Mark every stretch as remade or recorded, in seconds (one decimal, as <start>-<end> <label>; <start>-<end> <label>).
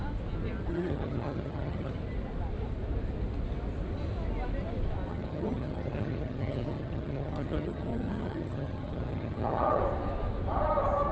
0.0-0.7 recorded; 0.7-1.9 remade; 1.9-5.1 recorded; 5.1-9.8 remade; 9.8-11.1 recorded